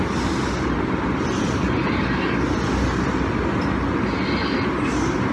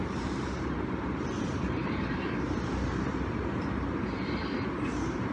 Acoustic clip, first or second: first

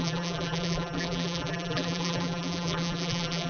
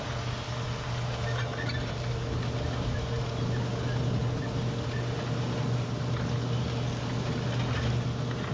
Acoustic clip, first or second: second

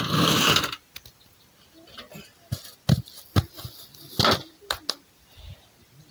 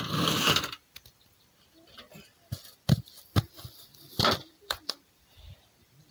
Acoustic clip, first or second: first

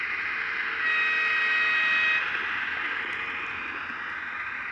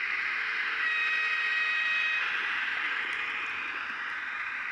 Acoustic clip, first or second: first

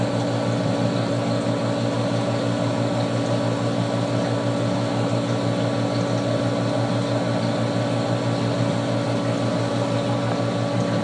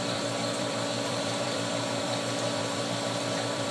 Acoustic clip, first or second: first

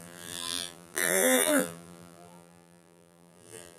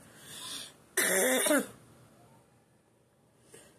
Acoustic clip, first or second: second